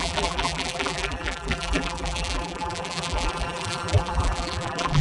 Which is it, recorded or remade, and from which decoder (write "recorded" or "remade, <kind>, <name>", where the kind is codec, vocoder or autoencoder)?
remade, vocoder, BigVGAN v2